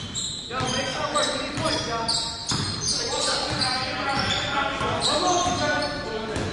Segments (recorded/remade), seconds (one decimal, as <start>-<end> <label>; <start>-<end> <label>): 0.0-0.9 recorded; 0.9-1.5 remade; 1.5-2.4 recorded; 2.4-6.1 remade; 6.1-6.5 recorded